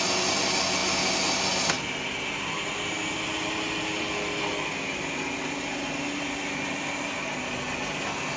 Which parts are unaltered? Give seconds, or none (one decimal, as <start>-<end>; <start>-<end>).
0.0-8.4